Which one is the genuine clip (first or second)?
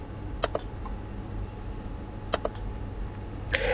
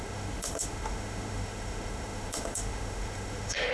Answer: first